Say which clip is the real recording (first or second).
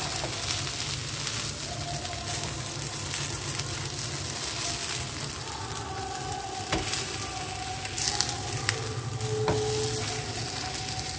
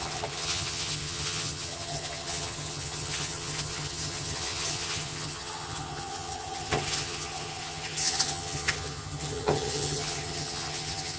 first